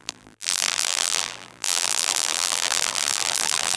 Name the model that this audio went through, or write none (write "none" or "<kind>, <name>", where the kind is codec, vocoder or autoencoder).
vocoder, BigVGAN v2